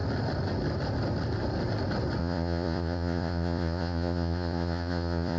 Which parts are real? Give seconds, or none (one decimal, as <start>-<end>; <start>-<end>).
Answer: 0.0-2.2